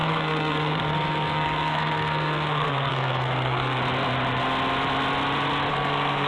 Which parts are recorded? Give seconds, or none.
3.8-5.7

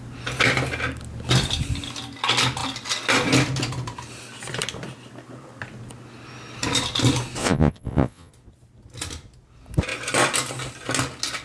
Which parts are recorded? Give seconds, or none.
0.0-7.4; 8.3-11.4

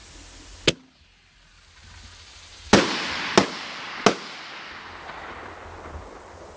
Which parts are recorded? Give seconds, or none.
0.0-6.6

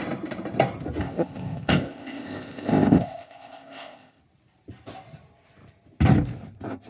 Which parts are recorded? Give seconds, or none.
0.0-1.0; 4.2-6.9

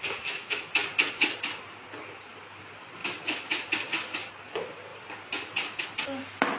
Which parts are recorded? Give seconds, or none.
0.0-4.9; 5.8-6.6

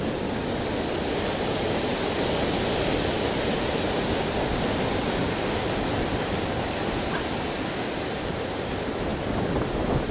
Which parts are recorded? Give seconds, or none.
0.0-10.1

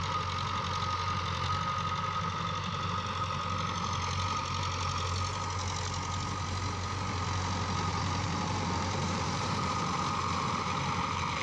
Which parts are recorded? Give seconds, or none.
0.0-7.9; 9.8-11.4